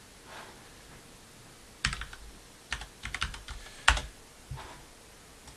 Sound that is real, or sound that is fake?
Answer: real